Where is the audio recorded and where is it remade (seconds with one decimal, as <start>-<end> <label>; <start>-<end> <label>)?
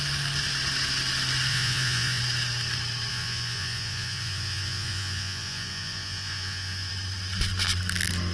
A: 0.0-1.5 recorded; 1.5-2.2 remade; 2.2-3.1 recorded; 3.1-6.9 remade; 6.9-8.3 recorded